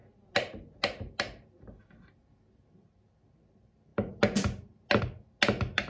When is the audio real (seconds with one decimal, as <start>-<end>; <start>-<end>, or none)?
0.0-5.9